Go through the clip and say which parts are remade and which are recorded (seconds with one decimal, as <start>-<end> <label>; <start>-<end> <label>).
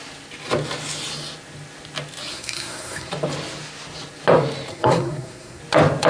0.0-2.3 recorded; 2.3-3.1 remade; 3.1-4.7 recorded; 4.7-5.6 remade; 5.6-6.1 recorded